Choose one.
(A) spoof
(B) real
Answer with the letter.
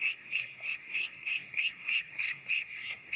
A